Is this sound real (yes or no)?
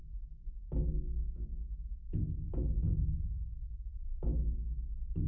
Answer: no